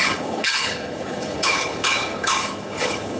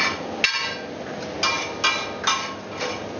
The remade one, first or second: first